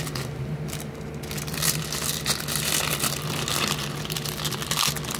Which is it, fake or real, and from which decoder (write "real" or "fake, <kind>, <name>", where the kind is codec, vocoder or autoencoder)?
real